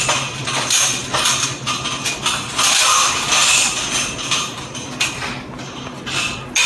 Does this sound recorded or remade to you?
recorded